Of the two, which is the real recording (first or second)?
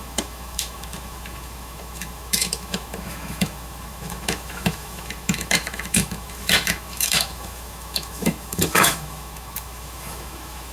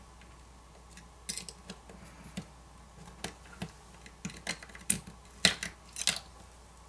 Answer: second